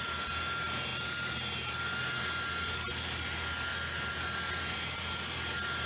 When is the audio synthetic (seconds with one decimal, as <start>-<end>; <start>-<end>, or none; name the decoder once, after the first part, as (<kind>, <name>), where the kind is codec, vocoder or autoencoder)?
none